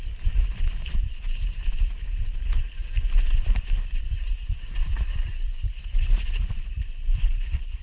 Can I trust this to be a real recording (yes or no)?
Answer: no